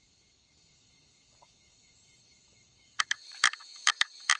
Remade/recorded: remade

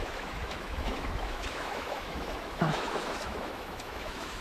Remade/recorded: remade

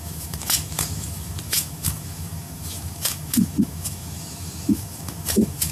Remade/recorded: remade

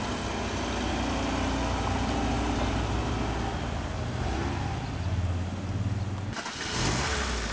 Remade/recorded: recorded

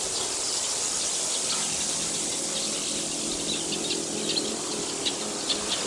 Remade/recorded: recorded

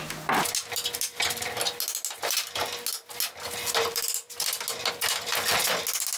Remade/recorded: recorded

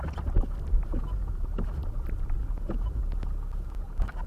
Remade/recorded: recorded